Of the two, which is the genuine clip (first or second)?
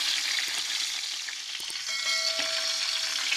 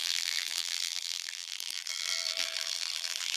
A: first